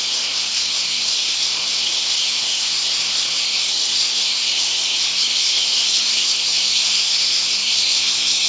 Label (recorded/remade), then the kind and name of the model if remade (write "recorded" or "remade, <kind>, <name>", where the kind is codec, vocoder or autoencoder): remade, codec, SNAC